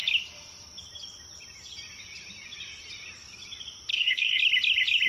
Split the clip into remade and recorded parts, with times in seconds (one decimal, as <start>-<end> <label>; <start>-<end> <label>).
0.0-3.9 recorded; 3.9-4.4 remade; 4.4-5.1 recorded